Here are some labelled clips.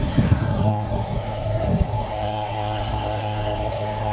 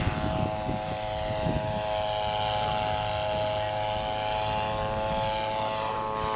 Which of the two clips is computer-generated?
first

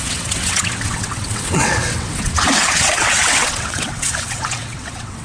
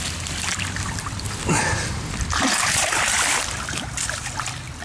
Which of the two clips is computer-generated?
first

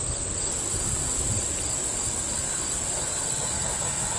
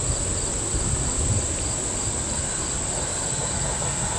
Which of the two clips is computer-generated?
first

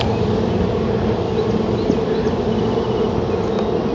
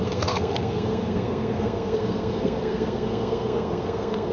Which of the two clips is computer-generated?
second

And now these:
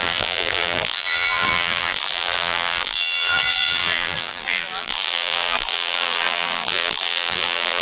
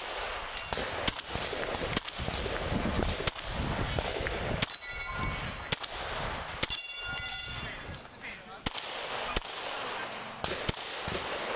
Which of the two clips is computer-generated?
first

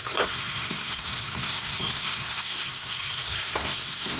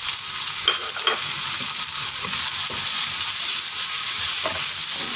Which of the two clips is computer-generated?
first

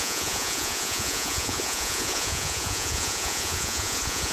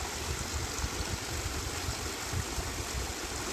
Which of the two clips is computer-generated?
first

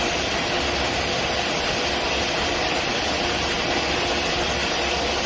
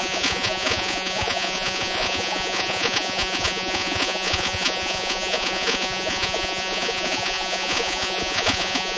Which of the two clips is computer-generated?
second